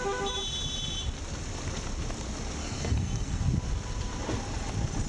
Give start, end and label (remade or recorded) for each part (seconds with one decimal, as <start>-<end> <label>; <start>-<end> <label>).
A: 0.0-2.6 recorded; 2.6-3.4 remade; 3.4-5.1 recorded